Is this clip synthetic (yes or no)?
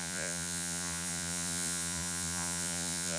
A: yes